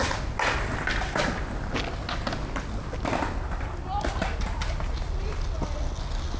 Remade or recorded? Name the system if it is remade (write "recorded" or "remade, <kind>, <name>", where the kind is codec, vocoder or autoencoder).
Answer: recorded